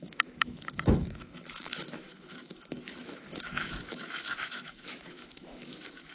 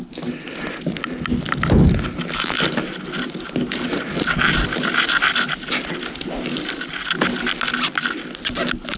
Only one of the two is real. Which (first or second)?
second